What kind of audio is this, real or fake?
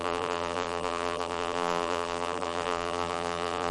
fake